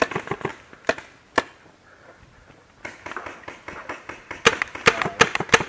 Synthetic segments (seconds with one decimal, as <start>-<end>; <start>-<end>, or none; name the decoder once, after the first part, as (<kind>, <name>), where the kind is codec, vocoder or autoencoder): none